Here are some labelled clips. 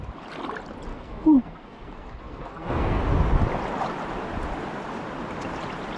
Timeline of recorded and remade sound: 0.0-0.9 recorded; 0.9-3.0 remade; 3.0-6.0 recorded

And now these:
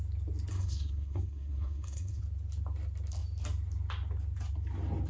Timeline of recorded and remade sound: 0.0-0.5 recorded; 0.5-2.2 remade; 2.2-5.1 recorded

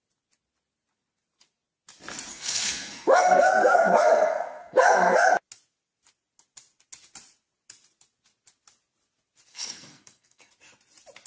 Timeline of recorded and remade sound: 0.0-2.3 recorded; 2.3-5.3 remade; 5.3-9.5 recorded; 9.5-10.5 remade; 10.5-11.3 recorded